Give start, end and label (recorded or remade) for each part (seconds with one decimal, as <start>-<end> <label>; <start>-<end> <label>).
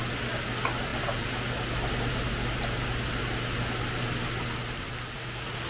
0.0-5.7 recorded